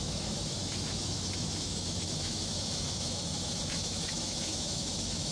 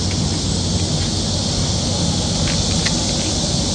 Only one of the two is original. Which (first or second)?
second